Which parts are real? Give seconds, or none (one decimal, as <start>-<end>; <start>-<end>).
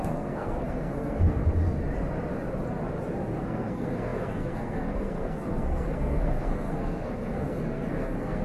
1.4-3.4